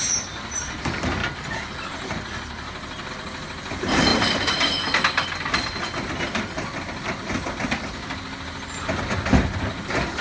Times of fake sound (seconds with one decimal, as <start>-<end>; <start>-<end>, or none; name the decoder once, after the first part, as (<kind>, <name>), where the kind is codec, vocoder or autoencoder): 0.0-4.1 (vocoder, BigVGAN v2); 9.3-10.2